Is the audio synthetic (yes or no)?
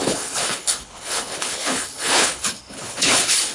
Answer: yes